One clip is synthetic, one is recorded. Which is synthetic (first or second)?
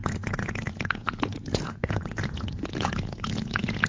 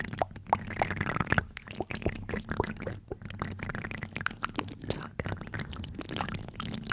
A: first